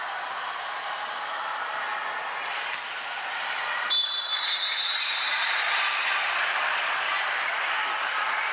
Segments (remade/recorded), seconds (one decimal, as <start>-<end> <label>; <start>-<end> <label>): 0.0-8.5 recorded